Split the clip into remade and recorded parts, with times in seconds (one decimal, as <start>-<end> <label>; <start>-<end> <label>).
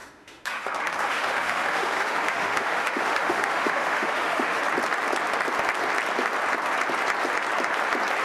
0.0-4.6 remade; 4.6-8.2 recorded